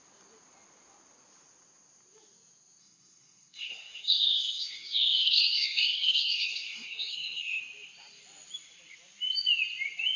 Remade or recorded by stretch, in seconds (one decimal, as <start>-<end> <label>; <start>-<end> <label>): 0.0-2.8 recorded; 2.8-7.6 remade; 7.6-10.2 recorded